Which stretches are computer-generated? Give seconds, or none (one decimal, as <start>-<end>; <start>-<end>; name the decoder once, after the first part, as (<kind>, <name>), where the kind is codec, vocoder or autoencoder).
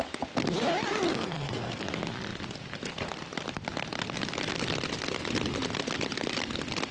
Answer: 1.1-1.8 (codec, SNAC)